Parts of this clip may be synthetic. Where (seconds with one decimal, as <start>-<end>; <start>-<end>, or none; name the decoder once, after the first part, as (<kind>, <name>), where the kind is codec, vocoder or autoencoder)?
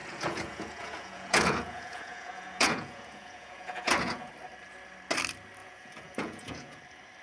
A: 0.0-4.3 (vocoder, Vocos); 5.6-6.8